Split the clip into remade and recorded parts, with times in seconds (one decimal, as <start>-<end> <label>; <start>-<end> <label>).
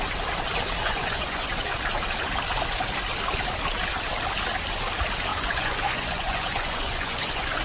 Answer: 0.0-0.8 recorded; 0.8-1.8 remade; 1.8-5.3 recorded; 5.3-7.6 remade